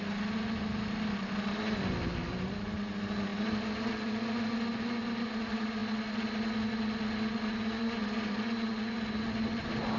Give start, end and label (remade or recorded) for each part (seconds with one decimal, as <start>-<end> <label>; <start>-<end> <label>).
0.0-10.0 recorded